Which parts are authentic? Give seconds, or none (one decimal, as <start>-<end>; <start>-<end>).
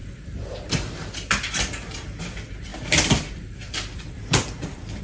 0.9-2.7